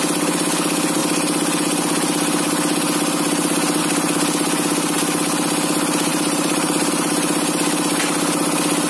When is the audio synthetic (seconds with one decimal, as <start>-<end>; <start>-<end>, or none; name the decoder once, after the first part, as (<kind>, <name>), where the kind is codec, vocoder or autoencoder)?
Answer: 6.1-6.9 (vocoder, BigVGAN v2)